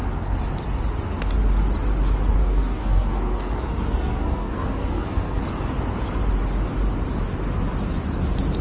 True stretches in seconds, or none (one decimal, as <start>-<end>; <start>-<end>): 0.0-2.4; 5.4-8.6